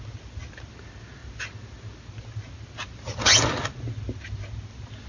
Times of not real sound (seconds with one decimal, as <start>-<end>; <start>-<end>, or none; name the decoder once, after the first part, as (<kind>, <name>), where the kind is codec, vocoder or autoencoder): none